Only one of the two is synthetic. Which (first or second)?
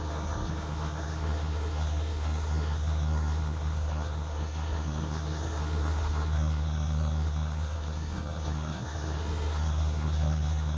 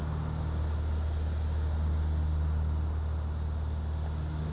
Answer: first